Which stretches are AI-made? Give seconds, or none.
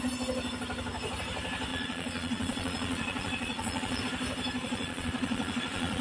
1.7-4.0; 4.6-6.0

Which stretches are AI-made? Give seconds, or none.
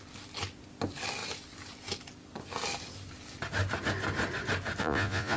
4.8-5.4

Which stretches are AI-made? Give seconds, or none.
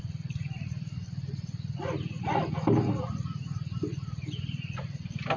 none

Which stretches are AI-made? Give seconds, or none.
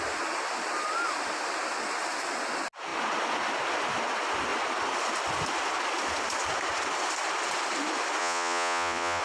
8.2-9.2